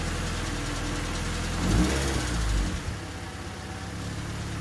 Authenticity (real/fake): real